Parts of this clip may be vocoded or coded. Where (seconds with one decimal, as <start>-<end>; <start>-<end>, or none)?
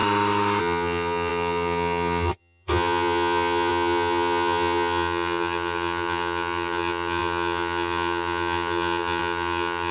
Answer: 0.6-9.9